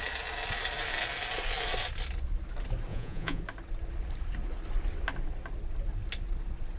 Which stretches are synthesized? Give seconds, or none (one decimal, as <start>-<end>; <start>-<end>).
2.9-3.4